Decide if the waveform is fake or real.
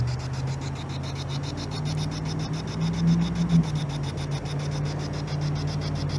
real